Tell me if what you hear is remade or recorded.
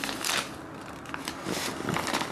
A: recorded